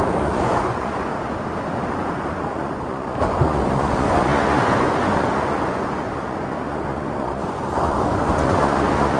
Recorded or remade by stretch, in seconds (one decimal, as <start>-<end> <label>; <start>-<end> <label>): 0.0-1.1 remade; 1.1-1.9 recorded; 1.9-9.2 remade